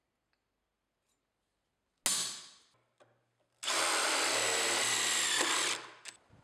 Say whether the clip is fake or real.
real